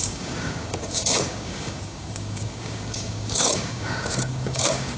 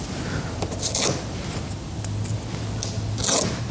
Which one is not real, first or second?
first